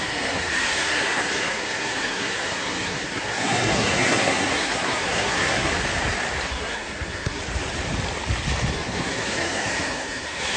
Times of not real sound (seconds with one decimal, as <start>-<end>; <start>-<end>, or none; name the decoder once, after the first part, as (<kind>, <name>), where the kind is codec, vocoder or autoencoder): 0.0-5.7 (codec, SNAC); 6.5-7.4; 8.7-10.6